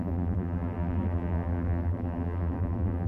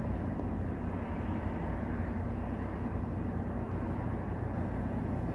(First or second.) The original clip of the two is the second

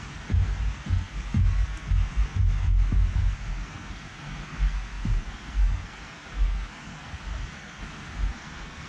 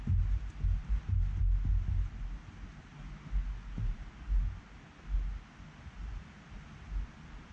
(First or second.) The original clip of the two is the second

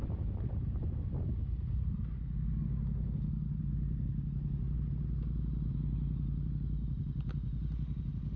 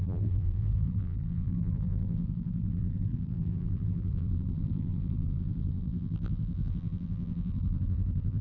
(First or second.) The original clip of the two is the first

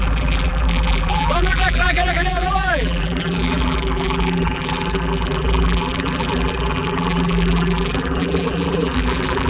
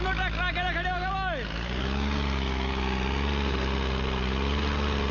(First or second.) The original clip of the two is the second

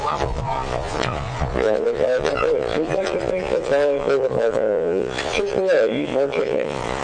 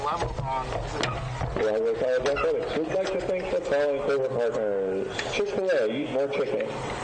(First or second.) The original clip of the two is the second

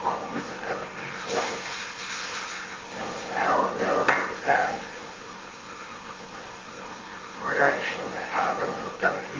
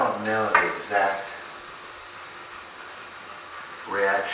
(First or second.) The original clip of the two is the second